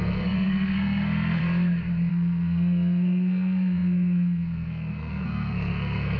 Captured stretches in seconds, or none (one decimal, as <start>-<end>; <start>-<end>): 1.4-2.1